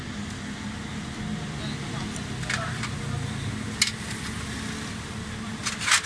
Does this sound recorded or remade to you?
recorded